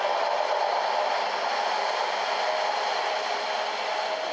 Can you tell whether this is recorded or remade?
recorded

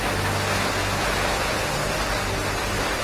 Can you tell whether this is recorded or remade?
recorded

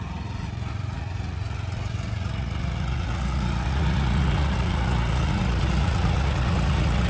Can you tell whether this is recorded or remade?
remade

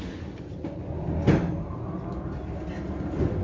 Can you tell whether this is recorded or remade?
recorded